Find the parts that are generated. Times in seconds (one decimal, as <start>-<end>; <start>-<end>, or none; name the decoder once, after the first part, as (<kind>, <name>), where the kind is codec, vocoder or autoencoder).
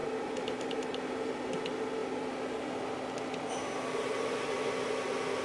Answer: 0.0-1.1 (vocoder, BigVGAN v2)